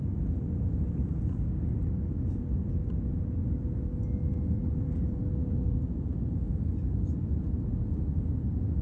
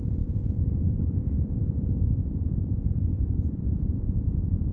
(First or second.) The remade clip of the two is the second